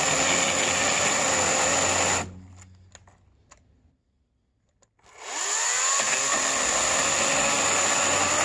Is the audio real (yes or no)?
yes